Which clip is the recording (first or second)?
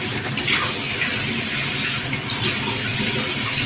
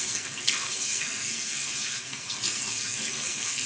first